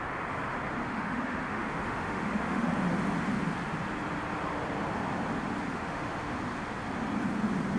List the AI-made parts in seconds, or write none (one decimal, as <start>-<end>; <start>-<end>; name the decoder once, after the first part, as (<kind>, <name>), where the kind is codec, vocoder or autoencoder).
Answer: 0.8-2.7 (autoencoder, DAC-VAE); 5.7-6.3